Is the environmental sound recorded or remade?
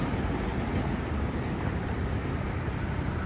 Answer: remade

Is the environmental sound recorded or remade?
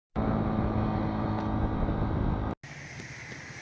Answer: recorded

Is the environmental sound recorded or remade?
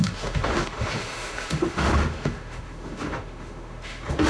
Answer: remade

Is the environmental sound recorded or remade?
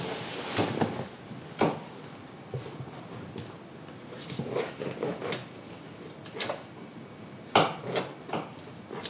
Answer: recorded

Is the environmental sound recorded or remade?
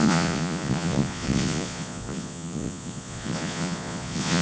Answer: remade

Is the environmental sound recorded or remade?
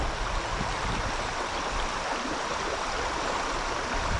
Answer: recorded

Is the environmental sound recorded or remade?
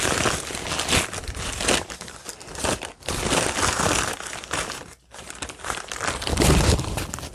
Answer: recorded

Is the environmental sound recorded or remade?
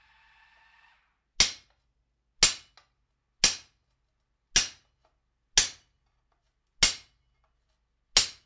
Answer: recorded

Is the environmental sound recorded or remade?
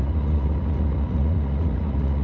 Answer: remade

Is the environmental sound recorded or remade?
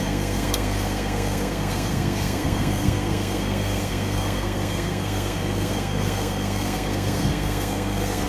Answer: remade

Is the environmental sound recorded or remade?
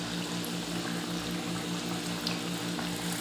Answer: recorded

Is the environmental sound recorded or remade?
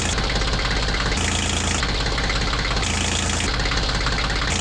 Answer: recorded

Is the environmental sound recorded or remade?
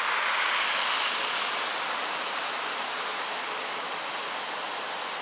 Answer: recorded